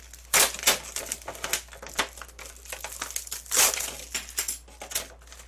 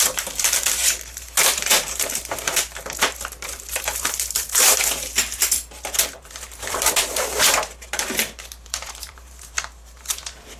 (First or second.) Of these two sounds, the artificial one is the second